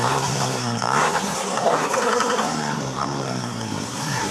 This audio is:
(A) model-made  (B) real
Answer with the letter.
A